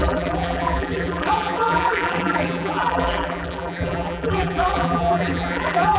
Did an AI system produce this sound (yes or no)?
yes